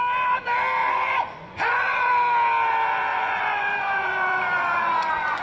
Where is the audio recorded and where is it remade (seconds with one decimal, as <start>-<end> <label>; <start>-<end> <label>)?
0.0-0.8 recorded; 0.8-2.1 remade; 2.1-3.1 recorded; 3.1-5.4 remade